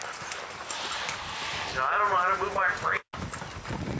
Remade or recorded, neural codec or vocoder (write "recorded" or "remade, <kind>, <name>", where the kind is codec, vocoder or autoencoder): recorded